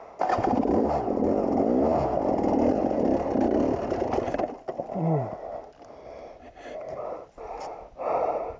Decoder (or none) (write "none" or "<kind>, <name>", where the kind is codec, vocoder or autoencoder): none